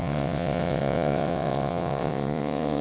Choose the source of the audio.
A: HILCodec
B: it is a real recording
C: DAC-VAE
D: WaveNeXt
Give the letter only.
D